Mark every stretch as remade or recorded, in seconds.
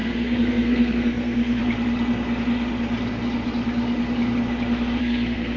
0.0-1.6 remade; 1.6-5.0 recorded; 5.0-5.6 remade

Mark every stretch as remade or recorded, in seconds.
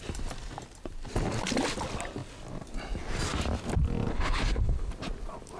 0.0-4.1 recorded; 4.1-4.9 remade; 4.9-5.6 recorded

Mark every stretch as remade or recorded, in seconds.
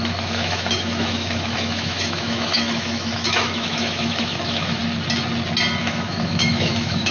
0.0-4.8 remade; 4.8-5.8 recorded; 5.8-7.1 remade